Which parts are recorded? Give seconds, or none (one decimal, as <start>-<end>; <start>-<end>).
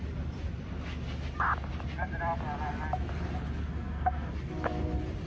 0.0-3.6; 4.3-5.3